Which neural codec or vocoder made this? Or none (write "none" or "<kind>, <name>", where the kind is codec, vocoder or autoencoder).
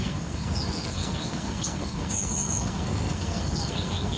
codec, SNAC